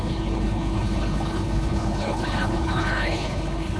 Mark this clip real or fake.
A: fake